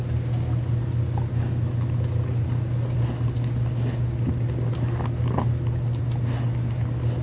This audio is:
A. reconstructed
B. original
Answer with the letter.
B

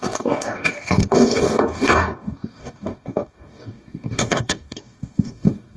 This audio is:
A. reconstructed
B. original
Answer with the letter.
A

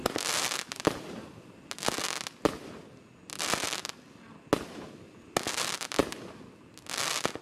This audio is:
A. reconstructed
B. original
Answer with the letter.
B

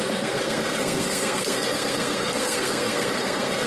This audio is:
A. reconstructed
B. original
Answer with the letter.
A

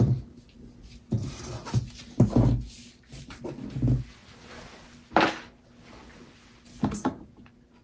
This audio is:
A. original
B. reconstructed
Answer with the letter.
A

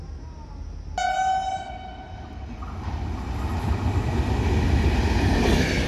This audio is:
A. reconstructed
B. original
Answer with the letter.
B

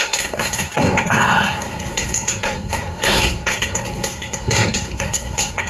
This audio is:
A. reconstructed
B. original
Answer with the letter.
A